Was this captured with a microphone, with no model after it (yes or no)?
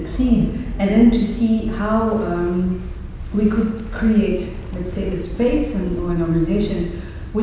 yes